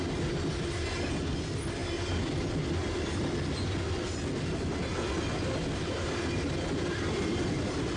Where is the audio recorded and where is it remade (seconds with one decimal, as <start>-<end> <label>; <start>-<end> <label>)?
0.0-8.0 recorded